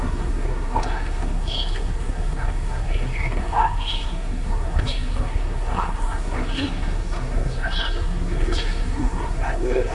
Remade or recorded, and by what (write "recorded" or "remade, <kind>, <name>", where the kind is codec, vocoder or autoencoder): remade, codec, SNAC